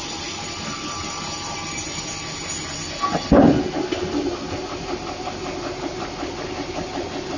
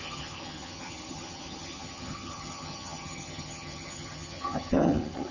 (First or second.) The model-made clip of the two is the second